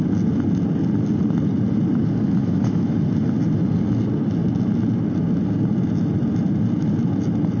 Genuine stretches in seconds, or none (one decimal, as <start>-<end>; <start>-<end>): 0.0-2.4; 3.0-7.6